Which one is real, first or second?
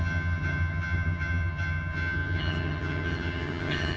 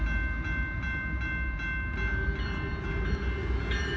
second